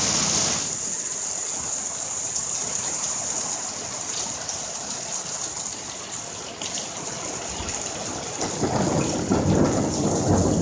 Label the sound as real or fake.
real